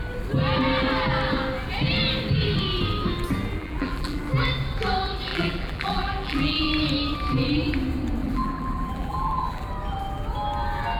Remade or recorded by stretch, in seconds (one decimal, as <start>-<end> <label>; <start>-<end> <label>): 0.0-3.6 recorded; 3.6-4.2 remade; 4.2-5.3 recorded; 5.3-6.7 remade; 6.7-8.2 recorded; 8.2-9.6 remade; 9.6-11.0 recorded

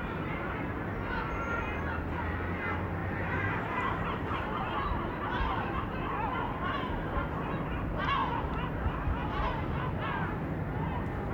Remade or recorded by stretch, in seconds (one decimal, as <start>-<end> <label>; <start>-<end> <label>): 0.0-3.0 recorded; 3.0-4.6 remade; 4.6-11.3 recorded

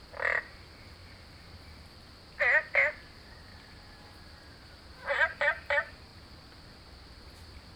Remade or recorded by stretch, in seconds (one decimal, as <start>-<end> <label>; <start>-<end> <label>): 0.0-3.5 recorded; 3.5-4.0 remade; 4.0-7.8 recorded